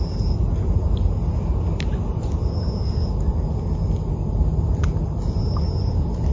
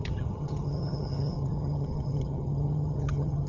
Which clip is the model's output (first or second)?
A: second